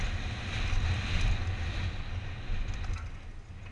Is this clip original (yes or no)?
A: yes